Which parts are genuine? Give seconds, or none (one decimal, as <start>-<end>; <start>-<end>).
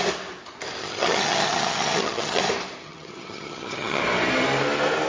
0.0-0.8; 2.4-2.8; 4.0-5.1